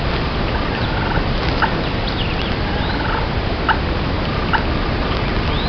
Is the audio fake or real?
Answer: real